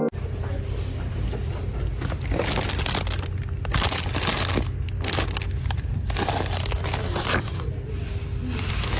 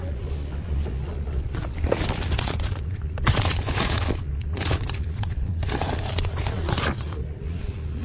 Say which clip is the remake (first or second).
second